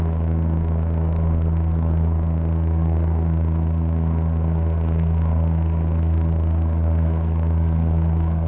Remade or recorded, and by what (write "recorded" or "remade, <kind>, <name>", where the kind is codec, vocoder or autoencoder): remade, codec, SNAC